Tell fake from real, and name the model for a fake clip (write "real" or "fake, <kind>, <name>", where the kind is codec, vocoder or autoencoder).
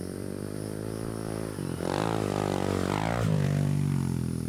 fake, vocoder, BigVGAN v2